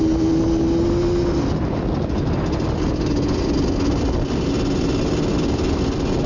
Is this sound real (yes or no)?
yes